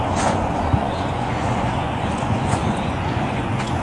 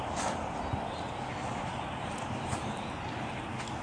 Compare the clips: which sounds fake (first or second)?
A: first